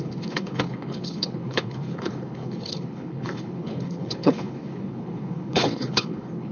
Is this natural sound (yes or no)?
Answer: no